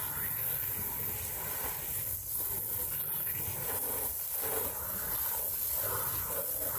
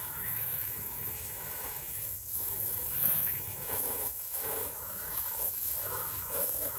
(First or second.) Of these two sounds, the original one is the first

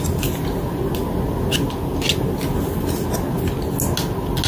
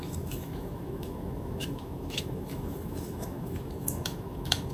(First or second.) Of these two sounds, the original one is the first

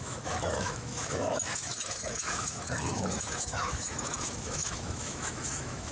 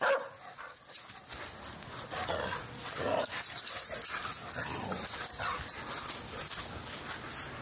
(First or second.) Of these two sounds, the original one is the second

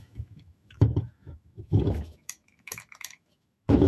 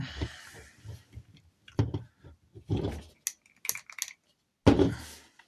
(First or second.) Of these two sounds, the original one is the second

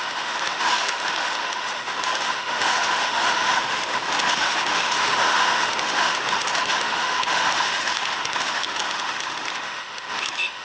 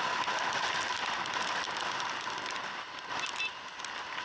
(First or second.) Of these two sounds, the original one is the second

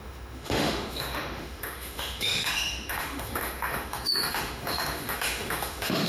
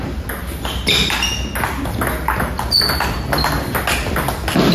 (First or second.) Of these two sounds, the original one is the second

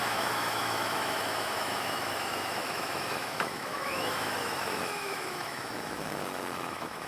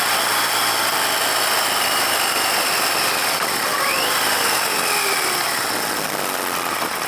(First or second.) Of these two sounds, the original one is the second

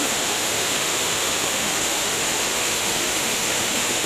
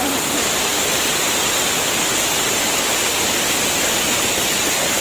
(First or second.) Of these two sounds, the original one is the second